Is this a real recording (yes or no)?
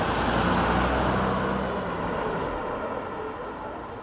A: yes